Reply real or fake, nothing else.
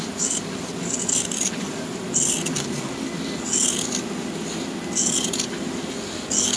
real